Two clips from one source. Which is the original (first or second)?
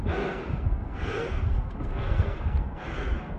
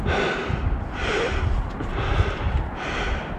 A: second